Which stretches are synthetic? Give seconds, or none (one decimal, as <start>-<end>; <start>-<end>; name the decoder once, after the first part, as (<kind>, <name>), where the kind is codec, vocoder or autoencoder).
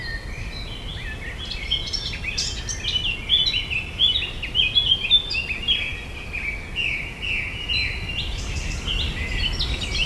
none